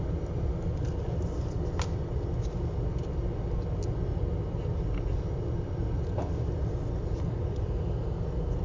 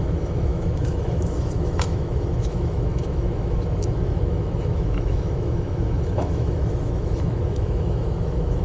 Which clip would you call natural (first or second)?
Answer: first